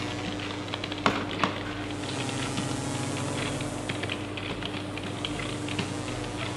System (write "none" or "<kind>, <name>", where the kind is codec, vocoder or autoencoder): none